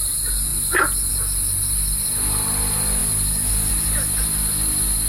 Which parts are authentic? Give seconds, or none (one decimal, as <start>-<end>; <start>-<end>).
0.0-5.1